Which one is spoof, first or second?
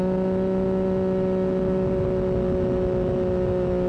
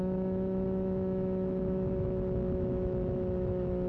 second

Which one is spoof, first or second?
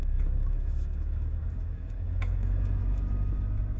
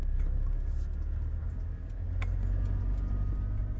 first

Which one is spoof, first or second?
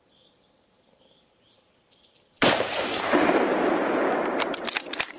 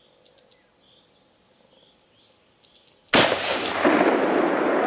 first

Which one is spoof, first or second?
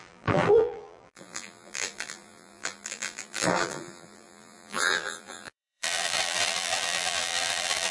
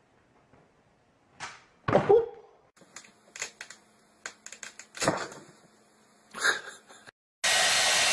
first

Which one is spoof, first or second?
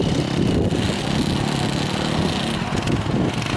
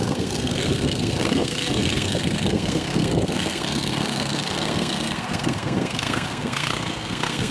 second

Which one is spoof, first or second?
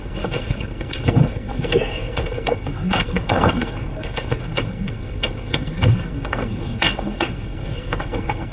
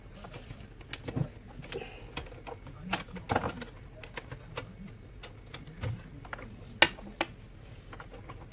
first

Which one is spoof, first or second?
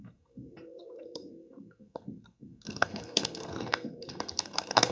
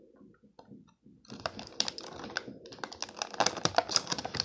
first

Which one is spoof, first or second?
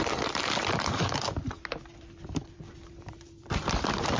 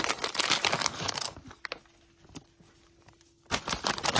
first